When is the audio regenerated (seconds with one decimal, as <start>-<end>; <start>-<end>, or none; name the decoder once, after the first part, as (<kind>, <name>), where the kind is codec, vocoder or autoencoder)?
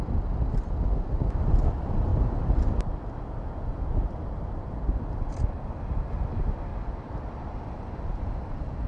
2.1-2.7 (vocoder, BigVGAN v2); 4.2-5.2; 6.7-7.6